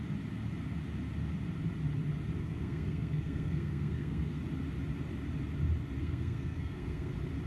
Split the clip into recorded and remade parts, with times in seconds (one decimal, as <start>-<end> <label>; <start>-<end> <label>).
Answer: 0.0-2.4 recorded; 2.4-4.4 remade; 4.4-6.0 recorded; 6.0-7.1 remade; 7.1-7.5 recorded